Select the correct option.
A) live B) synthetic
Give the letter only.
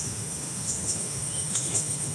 B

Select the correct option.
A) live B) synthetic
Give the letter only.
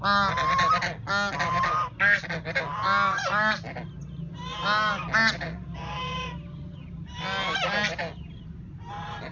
A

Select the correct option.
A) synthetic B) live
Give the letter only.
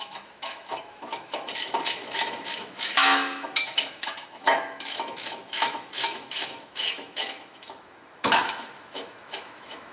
A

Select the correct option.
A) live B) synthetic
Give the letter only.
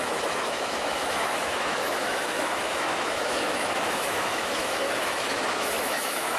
B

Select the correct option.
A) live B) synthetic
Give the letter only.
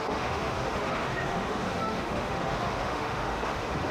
B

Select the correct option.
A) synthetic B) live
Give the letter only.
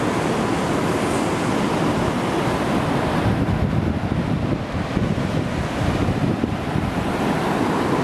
B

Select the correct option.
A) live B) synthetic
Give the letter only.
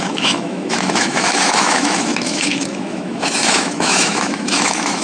B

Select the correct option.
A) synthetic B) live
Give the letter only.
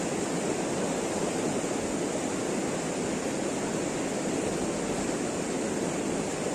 B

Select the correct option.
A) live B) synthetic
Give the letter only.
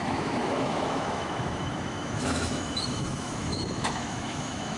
B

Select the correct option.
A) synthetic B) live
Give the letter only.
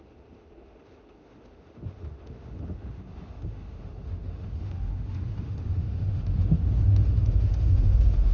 A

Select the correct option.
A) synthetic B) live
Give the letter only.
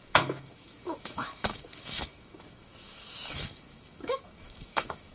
A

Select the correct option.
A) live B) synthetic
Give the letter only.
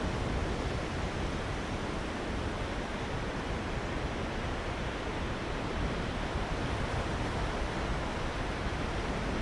A